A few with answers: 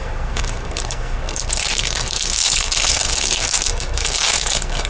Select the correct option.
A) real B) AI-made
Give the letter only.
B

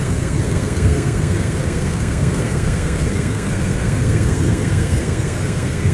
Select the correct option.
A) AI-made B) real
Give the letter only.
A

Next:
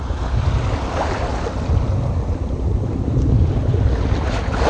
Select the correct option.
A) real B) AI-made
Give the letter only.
A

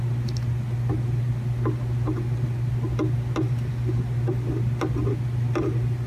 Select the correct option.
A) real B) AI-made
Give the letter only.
A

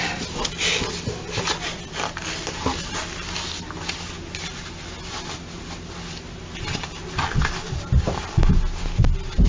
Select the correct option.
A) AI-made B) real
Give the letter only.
B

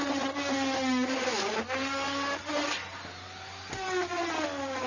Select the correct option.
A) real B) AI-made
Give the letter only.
A